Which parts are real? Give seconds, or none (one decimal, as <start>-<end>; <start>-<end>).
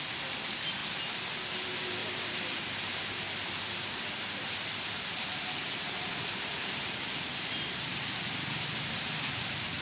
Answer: 0.0-2.0; 3.5-5.3